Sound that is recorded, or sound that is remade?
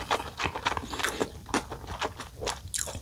recorded